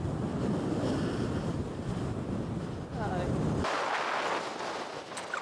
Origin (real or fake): real